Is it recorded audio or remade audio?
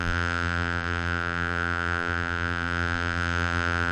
remade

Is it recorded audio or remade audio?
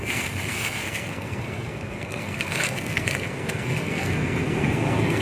remade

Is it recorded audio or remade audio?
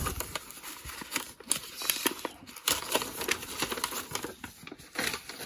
recorded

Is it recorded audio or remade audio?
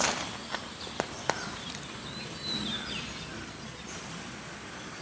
recorded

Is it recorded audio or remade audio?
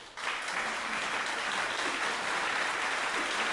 recorded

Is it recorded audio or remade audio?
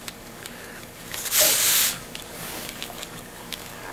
remade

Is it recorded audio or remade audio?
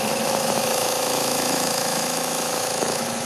remade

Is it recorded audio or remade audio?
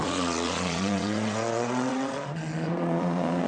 remade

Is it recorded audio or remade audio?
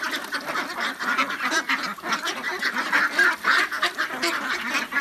recorded